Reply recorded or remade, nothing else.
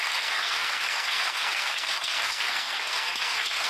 remade